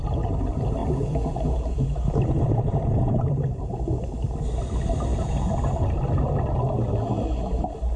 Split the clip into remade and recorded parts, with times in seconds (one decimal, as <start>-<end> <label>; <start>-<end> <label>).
0.0-0.8 recorded; 0.8-3.3 remade; 3.3-8.0 recorded